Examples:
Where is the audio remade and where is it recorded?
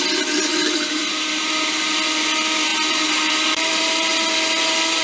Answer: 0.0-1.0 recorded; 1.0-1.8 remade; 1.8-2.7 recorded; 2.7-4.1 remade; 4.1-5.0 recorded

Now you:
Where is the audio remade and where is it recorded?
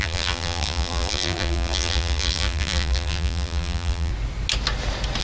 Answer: 0.0-4.1 remade; 4.1-5.2 recorded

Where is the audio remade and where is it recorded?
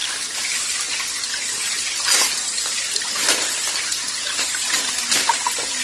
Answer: 0.0-1.0 remade; 1.0-5.8 recorded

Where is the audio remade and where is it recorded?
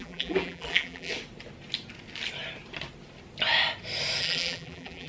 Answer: 0.0-1.1 remade; 1.1-4.2 recorded; 4.2-5.1 remade